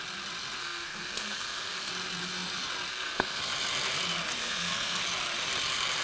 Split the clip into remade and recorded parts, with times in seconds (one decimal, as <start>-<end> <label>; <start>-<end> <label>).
0.0-0.6 recorded; 0.6-1.9 remade; 1.9-2.9 recorded; 2.9-3.4 remade; 3.4-4.4 recorded; 4.4-5.0 remade; 5.0-6.0 recorded